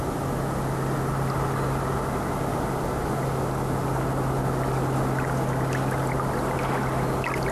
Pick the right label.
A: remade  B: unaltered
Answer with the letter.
B